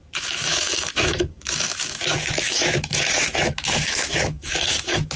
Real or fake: fake